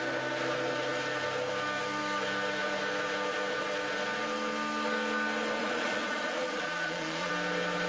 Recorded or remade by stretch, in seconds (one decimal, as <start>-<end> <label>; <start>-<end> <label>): 0.0-5.6 recorded; 5.6-7.3 remade; 7.3-7.9 recorded